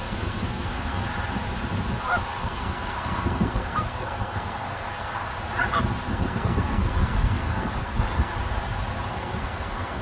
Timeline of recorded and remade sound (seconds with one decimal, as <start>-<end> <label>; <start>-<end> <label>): 0.0-1.0 remade; 1.0-2.4 recorded; 2.4-5.3 remade; 5.3-6.1 recorded; 6.1-8.3 remade; 8.3-9.1 recorded; 9.1-10.0 remade